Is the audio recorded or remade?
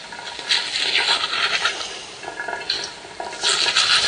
recorded